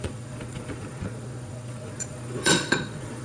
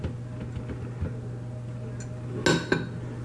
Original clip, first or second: second